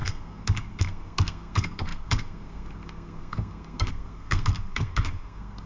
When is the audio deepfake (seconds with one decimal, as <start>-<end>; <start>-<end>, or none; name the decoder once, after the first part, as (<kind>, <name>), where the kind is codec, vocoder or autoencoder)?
0.0-5.7 (codec, SNAC)